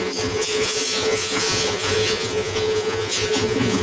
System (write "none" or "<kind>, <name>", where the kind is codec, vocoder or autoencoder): vocoder, Vocos